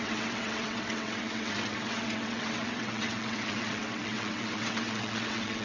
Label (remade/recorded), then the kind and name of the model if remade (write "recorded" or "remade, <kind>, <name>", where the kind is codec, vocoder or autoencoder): remade, vocoder, WaveNeXt